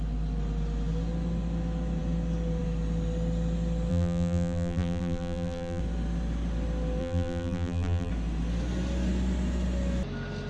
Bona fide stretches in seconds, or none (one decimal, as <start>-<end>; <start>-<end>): 0.0-3.9; 5.8-7.0; 8.1-10.5